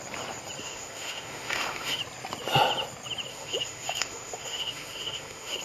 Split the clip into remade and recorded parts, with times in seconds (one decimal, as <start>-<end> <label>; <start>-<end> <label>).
0.0-0.6 recorded; 0.6-2.0 remade; 2.0-3.3 recorded; 3.3-5.6 remade